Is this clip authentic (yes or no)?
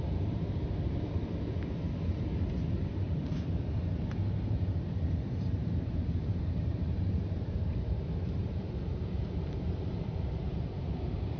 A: no